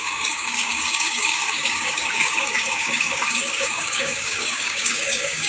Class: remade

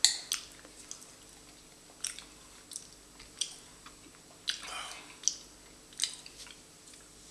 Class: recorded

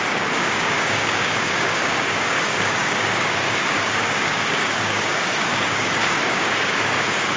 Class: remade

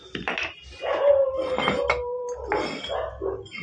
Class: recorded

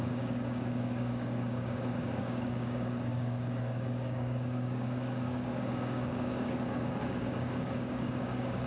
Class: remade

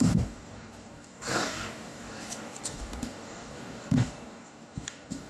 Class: remade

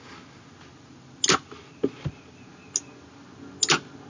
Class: recorded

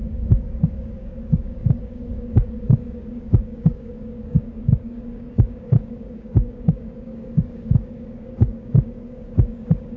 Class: remade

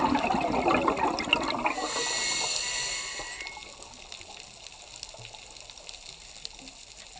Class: recorded